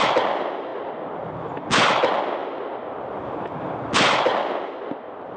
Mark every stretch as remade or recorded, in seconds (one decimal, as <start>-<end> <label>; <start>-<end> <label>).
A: 0.0-5.4 recorded